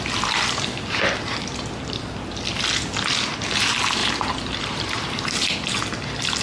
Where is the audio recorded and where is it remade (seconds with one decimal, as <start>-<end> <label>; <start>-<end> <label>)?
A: 0.0-0.7 recorded; 0.7-2.3 remade; 2.3-4.0 recorded; 4.0-5.8 remade; 5.8-6.4 recorded